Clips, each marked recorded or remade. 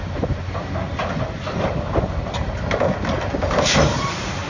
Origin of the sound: recorded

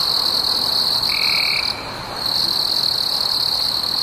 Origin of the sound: recorded